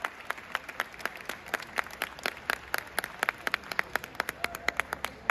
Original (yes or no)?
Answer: yes